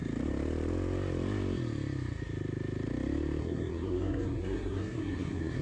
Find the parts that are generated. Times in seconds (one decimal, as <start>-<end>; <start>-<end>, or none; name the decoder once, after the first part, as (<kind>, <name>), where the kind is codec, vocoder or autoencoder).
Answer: 3.4-5.6 (codec, SNAC)